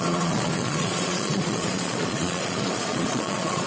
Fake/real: fake